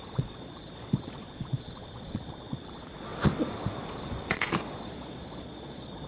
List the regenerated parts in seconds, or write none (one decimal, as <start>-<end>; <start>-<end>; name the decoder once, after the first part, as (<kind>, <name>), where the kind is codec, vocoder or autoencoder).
0.0-3.1 (vocoder, Vocos); 4.3-6.1